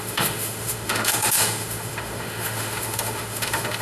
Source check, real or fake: fake